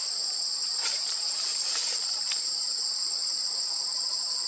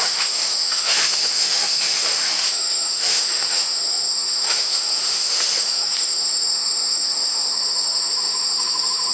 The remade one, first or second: second